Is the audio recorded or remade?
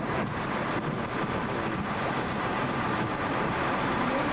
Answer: remade